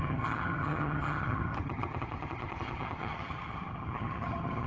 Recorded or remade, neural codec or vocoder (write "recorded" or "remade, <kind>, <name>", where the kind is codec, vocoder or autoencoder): remade, vocoder, HiFi-GAN